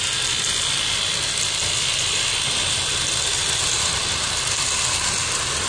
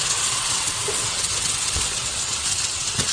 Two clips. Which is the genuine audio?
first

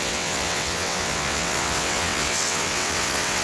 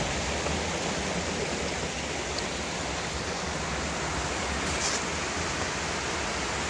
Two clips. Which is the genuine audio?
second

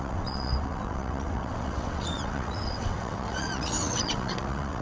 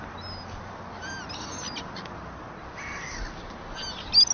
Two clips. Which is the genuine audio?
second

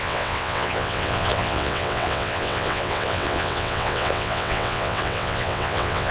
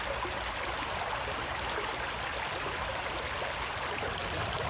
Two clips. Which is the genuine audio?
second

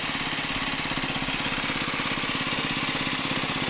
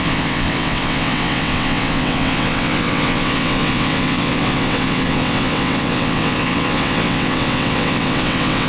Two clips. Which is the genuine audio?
first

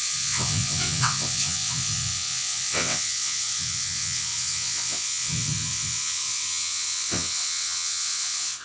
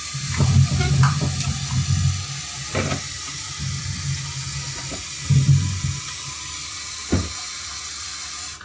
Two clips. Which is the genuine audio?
second